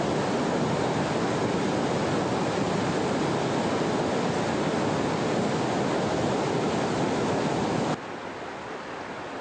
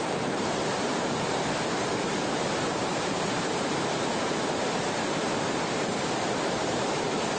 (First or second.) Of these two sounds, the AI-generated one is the second